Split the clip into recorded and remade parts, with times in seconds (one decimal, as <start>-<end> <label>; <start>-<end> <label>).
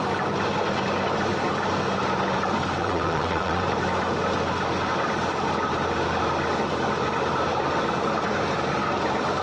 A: 0.0-2.8 recorded; 2.8-3.6 remade; 3.6-9.4 recorded